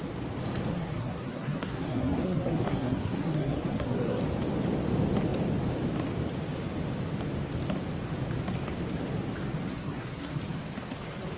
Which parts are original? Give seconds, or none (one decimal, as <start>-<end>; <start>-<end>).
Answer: 0.0-0.7; 4.2-9.7; 10.4-11.4